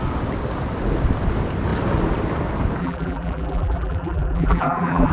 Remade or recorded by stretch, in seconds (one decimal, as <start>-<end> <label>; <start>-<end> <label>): 0.0-2.8 recorded; 2.8-5.1 remade